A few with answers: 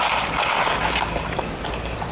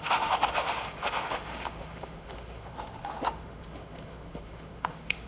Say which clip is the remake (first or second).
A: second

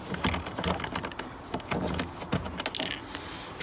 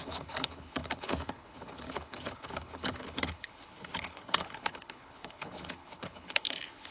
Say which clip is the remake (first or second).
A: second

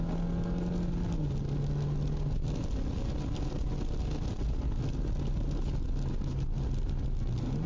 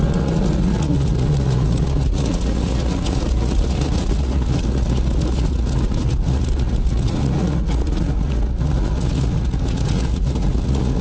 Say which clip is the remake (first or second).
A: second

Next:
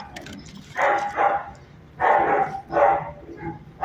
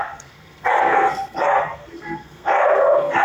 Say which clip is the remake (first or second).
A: second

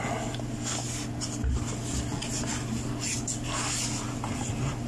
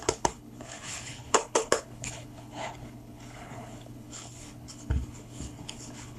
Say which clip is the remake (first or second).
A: second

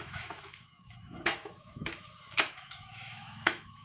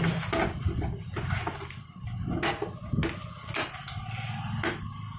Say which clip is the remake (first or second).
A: first